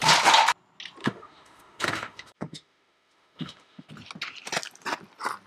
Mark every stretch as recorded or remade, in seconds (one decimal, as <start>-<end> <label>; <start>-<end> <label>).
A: 0.0-1.0 recorded; 1.0-3.9 remade; 3.9-5.5 recorded